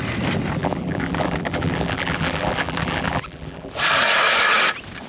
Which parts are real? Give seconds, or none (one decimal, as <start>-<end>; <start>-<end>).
0.0-0.6; 3.7-5.1